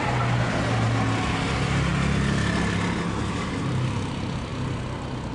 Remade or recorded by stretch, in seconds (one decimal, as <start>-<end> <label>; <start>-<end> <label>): 0.0-5.3 recorded